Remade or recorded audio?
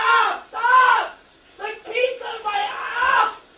recorded